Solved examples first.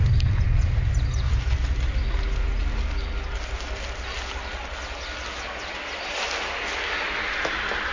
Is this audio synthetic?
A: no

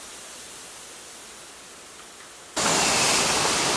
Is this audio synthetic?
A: no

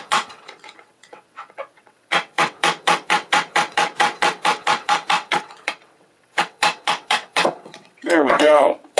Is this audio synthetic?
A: yes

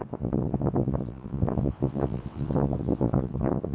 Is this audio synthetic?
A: yes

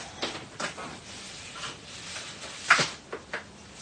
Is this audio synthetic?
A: no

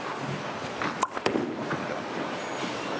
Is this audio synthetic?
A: no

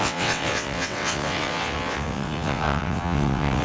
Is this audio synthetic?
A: yes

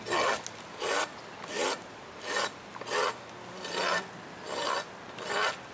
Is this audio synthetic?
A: no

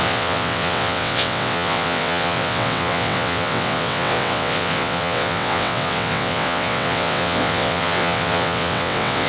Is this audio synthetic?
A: yes